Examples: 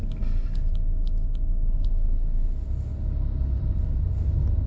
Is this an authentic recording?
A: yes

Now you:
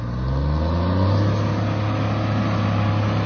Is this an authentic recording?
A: yes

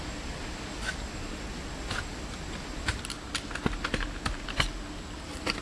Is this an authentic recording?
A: yes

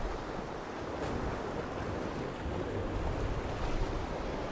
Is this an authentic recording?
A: yes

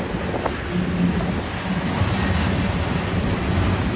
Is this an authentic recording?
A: yes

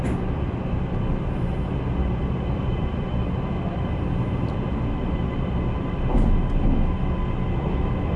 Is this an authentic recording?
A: yes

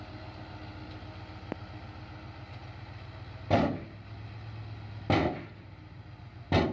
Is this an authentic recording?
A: yes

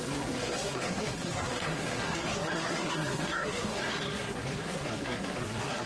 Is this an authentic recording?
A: no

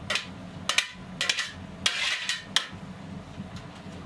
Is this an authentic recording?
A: yes